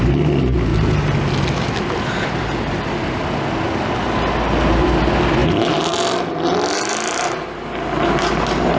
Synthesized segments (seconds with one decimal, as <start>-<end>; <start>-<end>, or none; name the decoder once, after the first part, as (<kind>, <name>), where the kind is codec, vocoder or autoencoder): none